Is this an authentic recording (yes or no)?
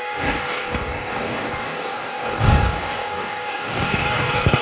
no